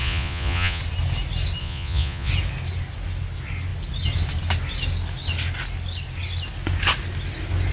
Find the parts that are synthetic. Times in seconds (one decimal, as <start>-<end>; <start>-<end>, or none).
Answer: 0.0-0.8; 1.6-2.3